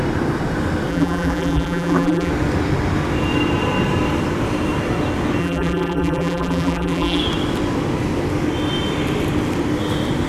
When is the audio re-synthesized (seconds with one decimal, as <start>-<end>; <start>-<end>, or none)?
0.9-2.3; 5.4-7.2